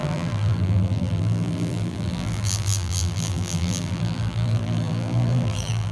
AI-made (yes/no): yes